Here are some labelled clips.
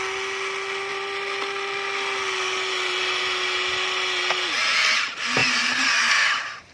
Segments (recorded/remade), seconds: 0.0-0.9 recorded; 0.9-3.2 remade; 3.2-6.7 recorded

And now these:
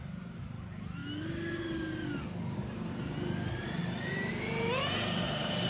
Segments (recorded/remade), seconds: 0.0-1.0 remade; 1.0-2.6 recorded; 2.6-5.7 remade